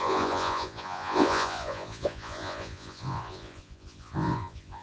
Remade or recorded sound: remade